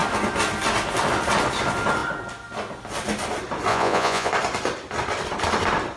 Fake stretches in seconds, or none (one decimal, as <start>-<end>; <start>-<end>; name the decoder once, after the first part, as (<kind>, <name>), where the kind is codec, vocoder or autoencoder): 3.7-4.3 (vocoder, Vocos)